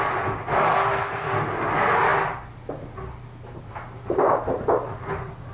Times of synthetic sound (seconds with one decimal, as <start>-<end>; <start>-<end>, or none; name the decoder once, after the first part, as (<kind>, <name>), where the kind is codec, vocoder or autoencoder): 0.7-1.3 (codec, SNAC)